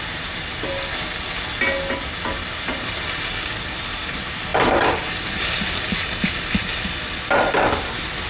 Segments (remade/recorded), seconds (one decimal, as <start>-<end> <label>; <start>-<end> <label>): 0.0-8.3 recorded